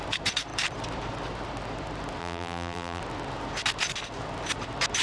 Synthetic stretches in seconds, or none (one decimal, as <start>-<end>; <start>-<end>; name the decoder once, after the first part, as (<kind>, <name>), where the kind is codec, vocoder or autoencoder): 2.2-3.0 (vocoder, BigVGAN v2)